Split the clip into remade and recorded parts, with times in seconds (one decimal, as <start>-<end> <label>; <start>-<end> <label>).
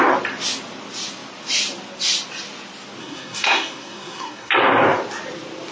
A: 0.0-3.0 recorded; 3.0-4.5 remade; 4.5-5.7 recorded